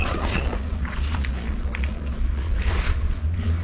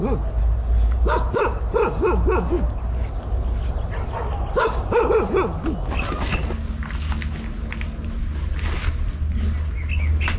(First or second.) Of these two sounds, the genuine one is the second